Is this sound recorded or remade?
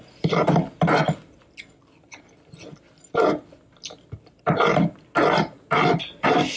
recorded